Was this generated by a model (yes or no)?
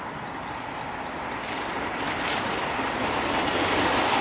no